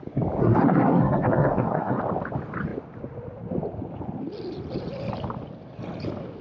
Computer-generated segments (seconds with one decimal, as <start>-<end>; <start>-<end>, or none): 0.4-2.0

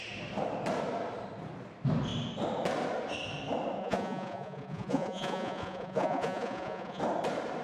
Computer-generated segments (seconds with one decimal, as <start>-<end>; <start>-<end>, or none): 3.8-7.0

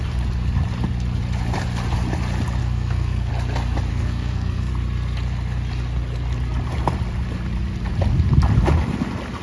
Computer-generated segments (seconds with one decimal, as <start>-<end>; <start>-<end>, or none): 2.6-3.3; 3.9-4.7

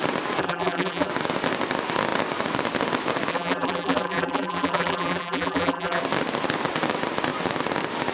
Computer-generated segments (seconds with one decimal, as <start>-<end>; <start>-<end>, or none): 0.4-1.1; 3.3-6.0